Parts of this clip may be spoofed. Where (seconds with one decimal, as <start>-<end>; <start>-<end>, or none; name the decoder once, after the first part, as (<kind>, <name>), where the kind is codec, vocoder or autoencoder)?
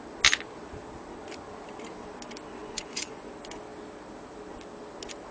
2.6-3.3 (vocoder, Vocos)